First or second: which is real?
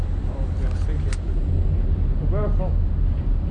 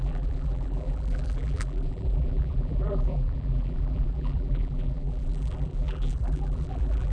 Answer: first